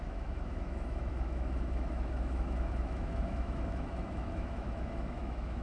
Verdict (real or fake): fake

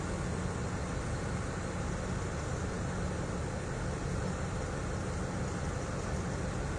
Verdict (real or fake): real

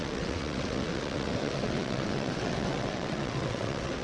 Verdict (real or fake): fake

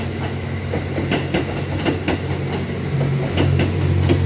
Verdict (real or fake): real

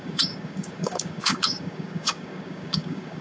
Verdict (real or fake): fake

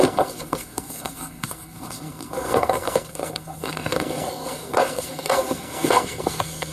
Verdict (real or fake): fake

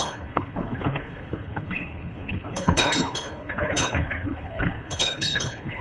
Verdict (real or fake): fake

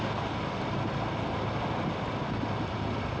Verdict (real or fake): real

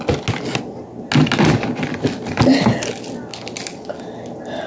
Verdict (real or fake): real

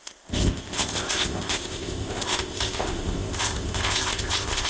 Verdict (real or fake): fake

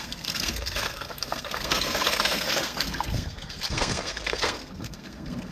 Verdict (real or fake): fake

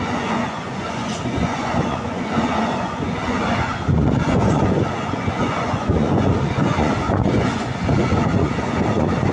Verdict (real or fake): fake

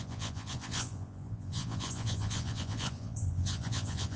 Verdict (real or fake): fake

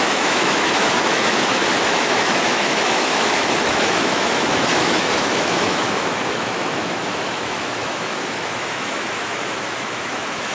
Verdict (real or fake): fake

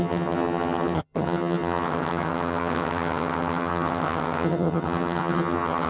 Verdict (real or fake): fake